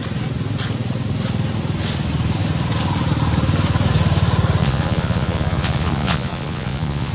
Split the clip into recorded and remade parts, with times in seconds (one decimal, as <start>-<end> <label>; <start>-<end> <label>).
0.0-4.6 recorded; 4.6-7.1 remade